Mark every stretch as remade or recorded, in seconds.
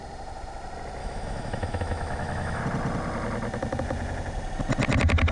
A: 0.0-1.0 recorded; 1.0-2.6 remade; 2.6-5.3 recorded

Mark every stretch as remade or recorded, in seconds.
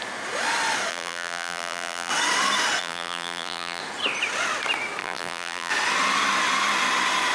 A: 0.0-0.9 recorded; 0.9-2.1 remade; 2.1-2.8 recorded; 2.8-3.8 remade; 3.8-5.0 recorded; 5.0-5.7 remade; 5.7-7.3 recorded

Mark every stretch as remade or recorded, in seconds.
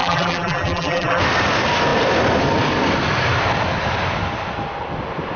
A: 0.0-1.2 remade; 1.2-5.4 recorded